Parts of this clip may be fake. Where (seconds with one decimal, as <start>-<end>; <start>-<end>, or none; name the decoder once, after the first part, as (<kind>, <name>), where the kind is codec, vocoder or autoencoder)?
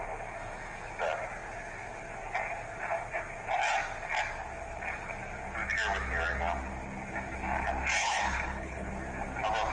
8.0-8.9 (codec, HILCodec)